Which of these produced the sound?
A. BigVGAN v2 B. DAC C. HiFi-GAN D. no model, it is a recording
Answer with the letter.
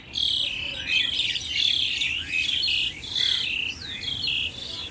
D